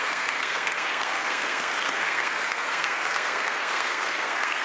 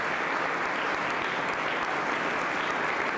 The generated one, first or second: first